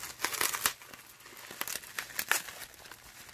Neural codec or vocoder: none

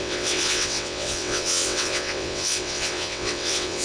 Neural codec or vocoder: vocoder, WaveNeXt